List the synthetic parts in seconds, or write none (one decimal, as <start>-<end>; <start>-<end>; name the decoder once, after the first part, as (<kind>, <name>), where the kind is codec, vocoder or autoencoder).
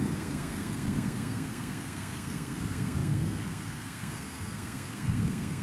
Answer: 0.0-5.6 (codec, SNAC)